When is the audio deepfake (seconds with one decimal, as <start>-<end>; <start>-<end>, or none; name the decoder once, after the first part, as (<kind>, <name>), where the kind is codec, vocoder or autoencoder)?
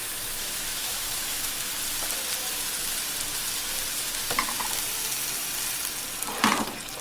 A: 0.0-1.7 (autoencoder, DAC-VAE)